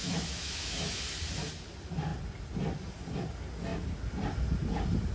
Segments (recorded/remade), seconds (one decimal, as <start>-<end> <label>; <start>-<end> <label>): 0.0-1.0 remade; 1.0-5.1 recorded